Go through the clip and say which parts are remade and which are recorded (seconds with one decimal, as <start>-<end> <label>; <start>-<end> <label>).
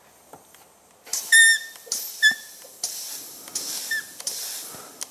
0.0-5.1 recorded